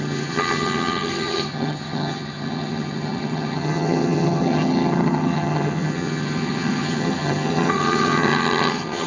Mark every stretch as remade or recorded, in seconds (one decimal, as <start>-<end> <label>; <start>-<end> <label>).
0.0-9.1 remade